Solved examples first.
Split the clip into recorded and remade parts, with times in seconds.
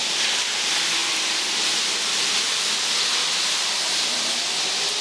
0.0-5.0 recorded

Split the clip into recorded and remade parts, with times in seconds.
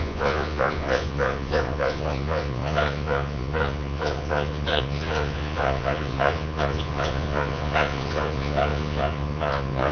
0.0-9.9 remade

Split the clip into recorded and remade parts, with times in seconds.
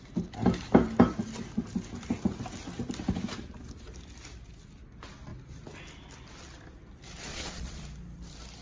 0.0-7.3 recorded; 7.3-7.8 remade; 7.8-8.6 recorded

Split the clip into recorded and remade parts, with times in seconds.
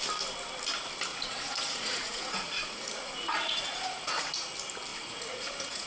0.0-1.1 recorded; 1.1-4.3 remade; 4.3-4.9 recorded; 4.9-5.9 remade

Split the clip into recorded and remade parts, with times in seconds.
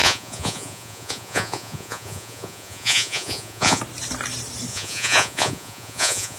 0.0-3.8 remade; 3.8-4.7 recorded; 4.7-6.4 remade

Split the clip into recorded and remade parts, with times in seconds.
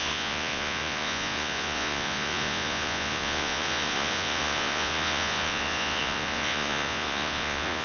0.0-7.8 remade